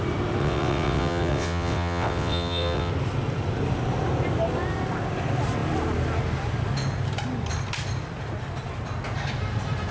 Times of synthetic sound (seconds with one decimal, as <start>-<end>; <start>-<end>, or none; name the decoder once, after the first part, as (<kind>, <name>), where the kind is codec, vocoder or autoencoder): 0.4-2.9 (vocoder, WaveNeXt)

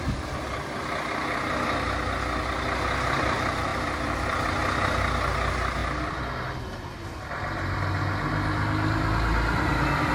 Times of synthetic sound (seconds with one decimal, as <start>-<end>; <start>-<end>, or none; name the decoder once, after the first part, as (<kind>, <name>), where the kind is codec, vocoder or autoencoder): 3.7-4.5 (vocoder, BigVGAN v2); 5.8-6.6